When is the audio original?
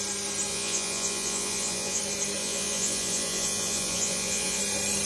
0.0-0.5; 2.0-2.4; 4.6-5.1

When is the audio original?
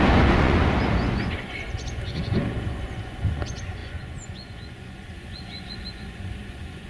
none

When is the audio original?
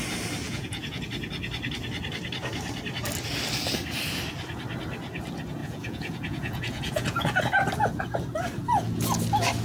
0.0-0.4; 1.0-5.6; 7.4-9.6